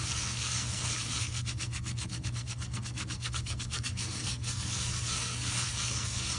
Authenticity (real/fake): fake